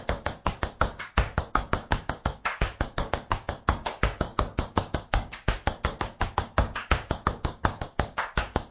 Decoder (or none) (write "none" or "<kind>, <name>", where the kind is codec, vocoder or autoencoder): codec, DAC